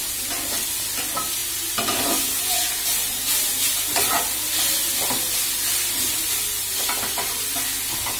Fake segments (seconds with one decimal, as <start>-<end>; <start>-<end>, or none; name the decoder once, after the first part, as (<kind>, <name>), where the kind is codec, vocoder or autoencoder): none